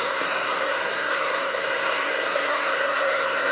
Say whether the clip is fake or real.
fake